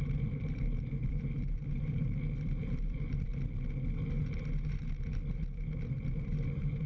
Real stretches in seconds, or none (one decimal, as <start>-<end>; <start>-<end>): 3.3-6.1